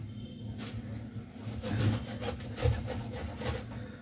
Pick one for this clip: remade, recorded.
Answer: recorded